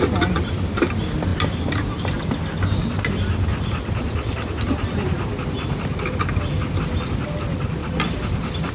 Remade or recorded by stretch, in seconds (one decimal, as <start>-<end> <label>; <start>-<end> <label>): 0.0-3.5 recorded; 3.5-6.4 remade; 6.4-7.8 recorded; 7.8-8.7 remade